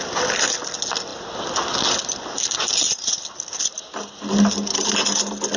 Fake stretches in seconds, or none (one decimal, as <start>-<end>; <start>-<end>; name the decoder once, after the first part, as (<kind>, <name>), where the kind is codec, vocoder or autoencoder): none